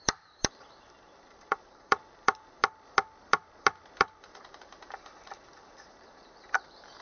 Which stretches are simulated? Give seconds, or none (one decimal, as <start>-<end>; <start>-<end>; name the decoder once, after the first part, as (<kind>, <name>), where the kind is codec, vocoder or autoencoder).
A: 0.0-2.6 (vocoder, BigVGAN v2); 4.0-7.0